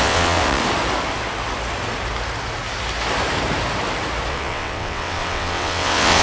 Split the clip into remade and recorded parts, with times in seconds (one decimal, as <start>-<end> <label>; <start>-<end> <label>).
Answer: 0.0-0.6 remade; 0.6-4.3 recorded; 4.3-6.2 remade